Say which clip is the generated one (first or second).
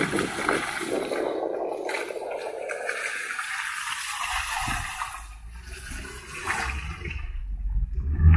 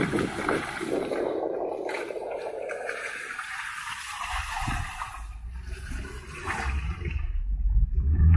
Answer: second